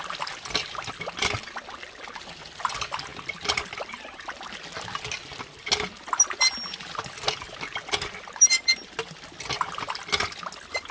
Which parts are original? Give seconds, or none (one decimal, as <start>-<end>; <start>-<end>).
0.0-10.9